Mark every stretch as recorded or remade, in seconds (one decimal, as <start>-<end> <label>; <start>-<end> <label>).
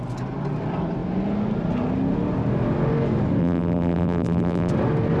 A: 0.0-3.4 recorded; 3.4-4.7 remade; 4.7-5.2 recorded